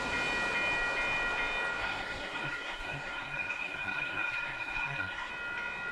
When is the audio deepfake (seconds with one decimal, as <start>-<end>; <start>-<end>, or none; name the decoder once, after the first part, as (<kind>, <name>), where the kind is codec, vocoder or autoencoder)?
1.8-5.3 (codec, SNAC)